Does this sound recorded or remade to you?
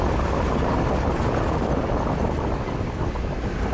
recorded